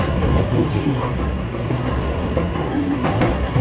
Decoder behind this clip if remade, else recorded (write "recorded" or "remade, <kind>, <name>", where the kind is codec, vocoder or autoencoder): remade, codec, SNAC